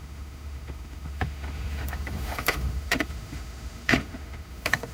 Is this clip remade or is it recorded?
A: remade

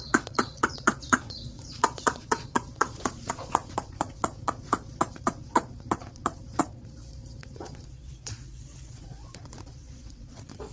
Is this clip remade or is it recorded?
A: remade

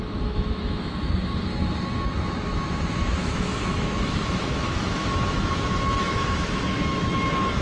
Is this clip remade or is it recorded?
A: remade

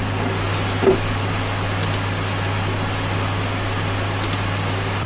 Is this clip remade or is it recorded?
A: recorded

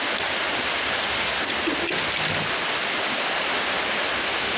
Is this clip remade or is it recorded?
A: recorded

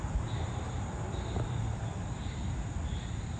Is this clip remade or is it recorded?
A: remade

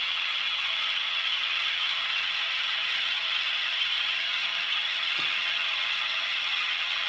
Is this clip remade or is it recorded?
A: remade